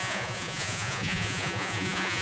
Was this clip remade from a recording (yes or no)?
yes